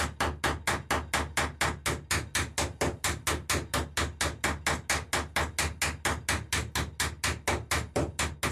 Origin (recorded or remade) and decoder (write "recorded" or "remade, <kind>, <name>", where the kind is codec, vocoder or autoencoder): recorded